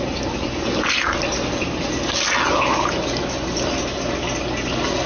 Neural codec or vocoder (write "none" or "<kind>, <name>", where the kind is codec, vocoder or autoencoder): none